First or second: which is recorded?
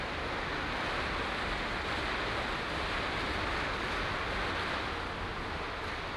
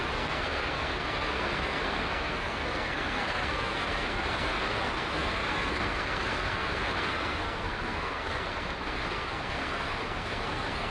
first